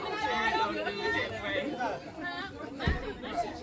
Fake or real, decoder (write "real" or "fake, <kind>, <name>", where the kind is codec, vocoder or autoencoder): real